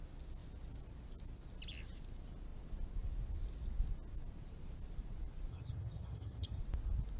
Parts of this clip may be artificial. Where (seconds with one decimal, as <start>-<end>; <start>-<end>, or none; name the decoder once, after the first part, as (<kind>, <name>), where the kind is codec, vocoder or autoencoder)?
5.5-6.6 (vocoder, HiFi-GAN)